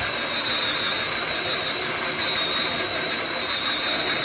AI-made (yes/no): no